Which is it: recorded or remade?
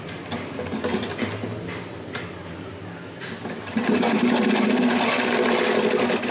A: recorded